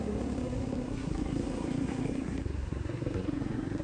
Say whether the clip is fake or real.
fake